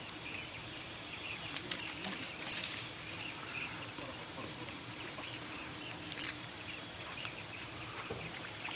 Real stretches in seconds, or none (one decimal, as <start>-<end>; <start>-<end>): 5.6-6.3